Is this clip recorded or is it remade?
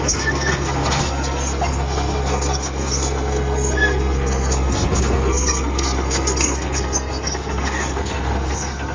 remade